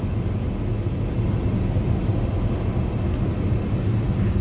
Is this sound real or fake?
real